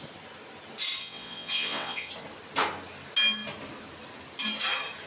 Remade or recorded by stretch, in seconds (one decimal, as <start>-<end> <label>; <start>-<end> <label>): 0.0-1.0 recorded; 1.0-2.1 remade; 2.1-5.1 recorded

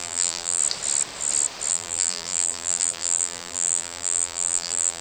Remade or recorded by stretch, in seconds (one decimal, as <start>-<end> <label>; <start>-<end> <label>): 0.0-0.6 remade; 0.6-1.7 recorded; 1.7-5.0 remade

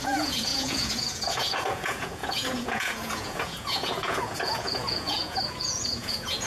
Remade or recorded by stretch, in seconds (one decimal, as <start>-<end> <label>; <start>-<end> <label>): 0.0-6.5 remade

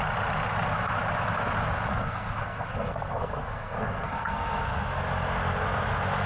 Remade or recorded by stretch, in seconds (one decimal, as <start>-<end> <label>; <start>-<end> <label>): 0.0-1.9 recorded; 1.9-5.0 remade; 5.0-6.3 recorded

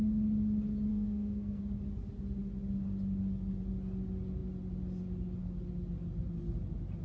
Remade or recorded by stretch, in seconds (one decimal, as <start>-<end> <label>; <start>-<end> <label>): 0.0-0.9 recorded; 0.9-1.6 remade; 1.6-7.0 recorded

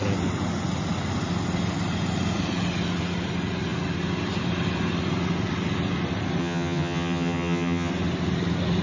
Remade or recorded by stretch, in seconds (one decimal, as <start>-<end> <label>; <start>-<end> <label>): 0.0-6.4 recorded; 6.4-7.9 remade; 7.9-8.8 recorded